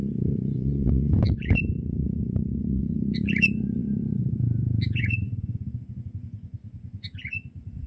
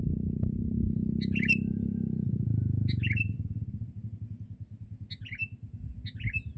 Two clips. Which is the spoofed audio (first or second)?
first